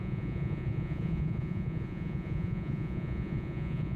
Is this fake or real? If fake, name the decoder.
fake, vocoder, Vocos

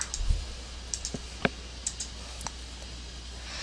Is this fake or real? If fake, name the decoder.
real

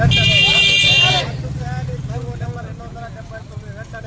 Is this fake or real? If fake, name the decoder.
real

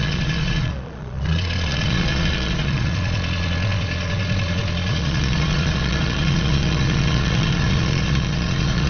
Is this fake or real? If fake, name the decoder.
fake, vocoder, Vocos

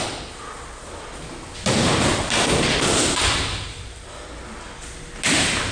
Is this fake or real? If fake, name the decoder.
real